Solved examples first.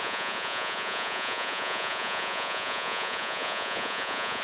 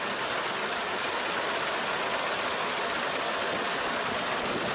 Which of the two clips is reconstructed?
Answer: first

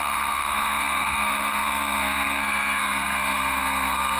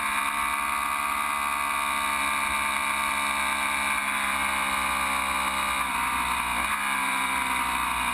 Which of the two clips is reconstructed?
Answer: first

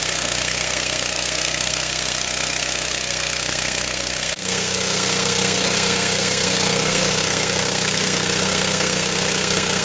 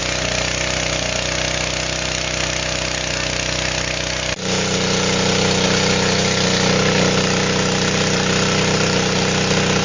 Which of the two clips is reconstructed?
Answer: first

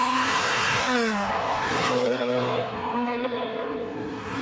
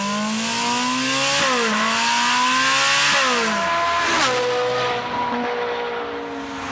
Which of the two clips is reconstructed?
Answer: first